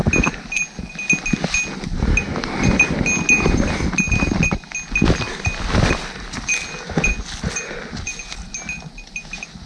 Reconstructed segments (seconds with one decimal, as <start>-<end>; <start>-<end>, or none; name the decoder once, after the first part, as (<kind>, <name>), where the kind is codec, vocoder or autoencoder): none